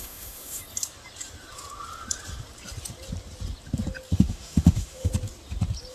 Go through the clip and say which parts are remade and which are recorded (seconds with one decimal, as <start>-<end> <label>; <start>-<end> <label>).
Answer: 0.0-0.6 remade; 0.6-4.1 recorded; 4.1-5.1 remade; 5.1-5.9 recorded